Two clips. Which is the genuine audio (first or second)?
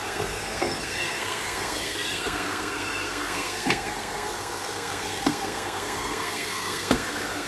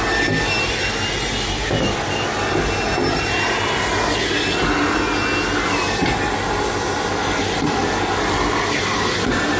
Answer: second